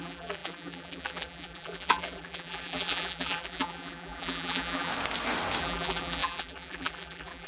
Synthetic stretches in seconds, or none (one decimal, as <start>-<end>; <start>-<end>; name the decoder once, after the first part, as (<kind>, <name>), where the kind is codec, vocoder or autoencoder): 0.0-4.9 (vocoder, BigVGAN v2); 5.6-7.5